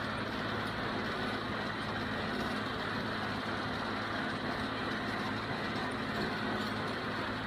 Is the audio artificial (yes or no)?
no